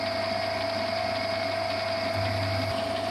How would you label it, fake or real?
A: real